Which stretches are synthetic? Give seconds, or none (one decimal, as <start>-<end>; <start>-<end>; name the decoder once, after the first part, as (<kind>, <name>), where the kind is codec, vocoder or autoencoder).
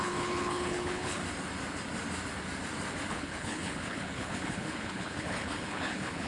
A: 0.0-1.2 (codec, HILCodec); 3.1-6.3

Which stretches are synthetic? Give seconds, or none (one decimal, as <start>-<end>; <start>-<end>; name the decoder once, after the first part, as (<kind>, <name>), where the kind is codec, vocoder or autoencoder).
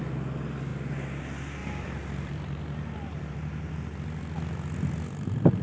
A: 1.6-3.7 (vocoder, BigVGAN v2)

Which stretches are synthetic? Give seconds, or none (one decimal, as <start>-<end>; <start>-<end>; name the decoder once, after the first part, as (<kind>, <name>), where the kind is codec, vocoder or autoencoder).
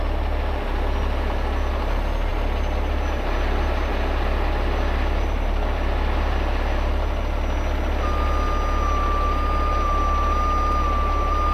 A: none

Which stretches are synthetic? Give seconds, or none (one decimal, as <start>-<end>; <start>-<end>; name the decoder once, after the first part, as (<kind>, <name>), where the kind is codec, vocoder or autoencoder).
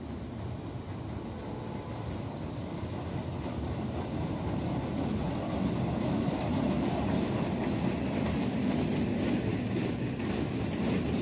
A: 9.5-10.2 (codec, DAC)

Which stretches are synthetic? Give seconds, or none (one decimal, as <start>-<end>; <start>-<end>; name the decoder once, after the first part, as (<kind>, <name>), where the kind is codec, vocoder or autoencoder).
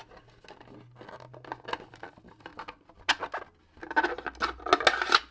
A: none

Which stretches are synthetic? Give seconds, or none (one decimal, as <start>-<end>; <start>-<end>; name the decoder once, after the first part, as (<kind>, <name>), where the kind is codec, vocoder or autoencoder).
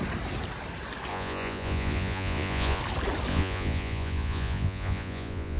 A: 1.1-2.8 (vocoder, Vocos); 3.3-5.6